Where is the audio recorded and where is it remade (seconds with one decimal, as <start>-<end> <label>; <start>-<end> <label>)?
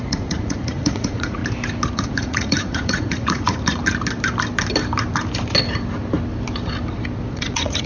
0.0-1.4 remade; 1.4-1.9 recorded; 1.9-3.8 remade; 3.8-7.3 recorded; 7.3-7.9 remade